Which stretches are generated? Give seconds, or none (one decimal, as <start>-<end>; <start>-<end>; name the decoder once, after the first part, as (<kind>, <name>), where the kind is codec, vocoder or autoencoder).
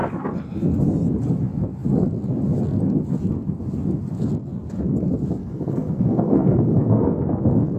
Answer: 5.4-7.3 (codec, SNAC)